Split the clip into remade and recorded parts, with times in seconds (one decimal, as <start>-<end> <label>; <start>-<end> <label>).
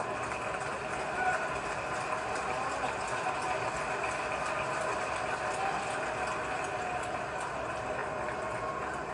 0.0-9.1 recorded